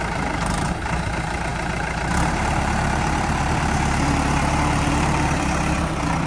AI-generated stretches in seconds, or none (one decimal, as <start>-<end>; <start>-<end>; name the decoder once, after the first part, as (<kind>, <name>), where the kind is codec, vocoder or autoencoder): 0.0-6.3 (vocoder, BigVGAN v2)